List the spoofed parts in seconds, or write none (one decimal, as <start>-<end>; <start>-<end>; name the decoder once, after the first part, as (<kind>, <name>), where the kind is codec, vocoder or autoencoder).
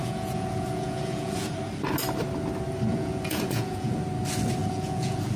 0.0-1.5 (vocoder, Vocos); 2.9-4.0; 4.6-5.4